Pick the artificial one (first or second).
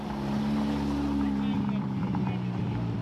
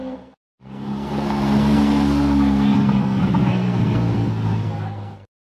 second